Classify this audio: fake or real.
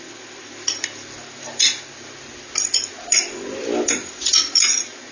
real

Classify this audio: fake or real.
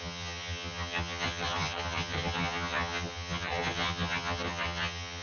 fake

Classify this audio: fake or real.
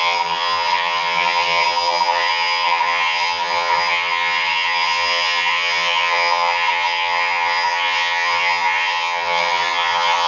fake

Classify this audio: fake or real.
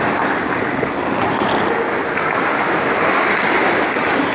real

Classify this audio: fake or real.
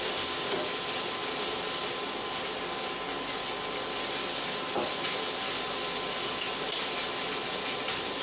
real